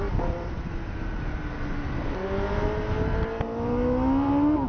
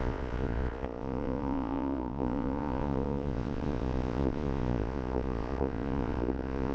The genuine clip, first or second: first